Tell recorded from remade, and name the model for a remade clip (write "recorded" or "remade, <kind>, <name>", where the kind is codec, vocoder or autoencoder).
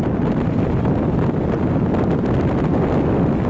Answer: recorded